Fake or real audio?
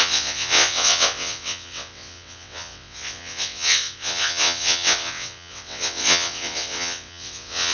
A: fake